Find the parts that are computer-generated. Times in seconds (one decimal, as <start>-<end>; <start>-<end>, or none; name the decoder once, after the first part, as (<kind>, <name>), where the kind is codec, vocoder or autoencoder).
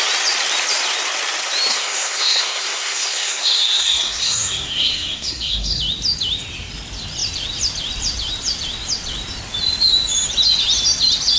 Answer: 1.7-5.8 (codec, SNAC)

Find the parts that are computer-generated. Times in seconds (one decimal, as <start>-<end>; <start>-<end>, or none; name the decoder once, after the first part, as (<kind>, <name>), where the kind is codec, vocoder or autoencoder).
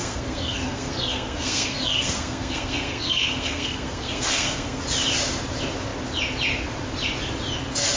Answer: 0.0-4.8 (codec, SNAC)